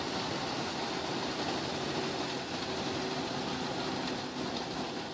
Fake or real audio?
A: real